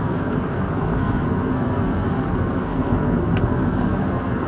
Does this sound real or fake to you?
fake